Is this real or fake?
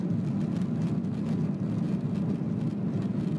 real